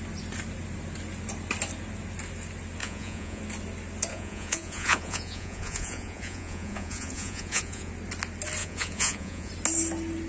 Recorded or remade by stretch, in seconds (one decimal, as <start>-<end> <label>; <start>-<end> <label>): 0.0-2.8 recorded; 2.8-3.4 remade; 3.4-4.1 recorded; 4.1-7.9 remade; 7.9-8.6 recorded; 8.6-9.5 remade; 9.5-10.3 recorded